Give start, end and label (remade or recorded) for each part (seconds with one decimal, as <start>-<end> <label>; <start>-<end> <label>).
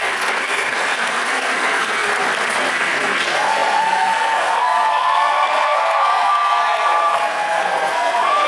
0.0-2.1 remade; 2.1-2.7 recorded; 2.7-8.5 remade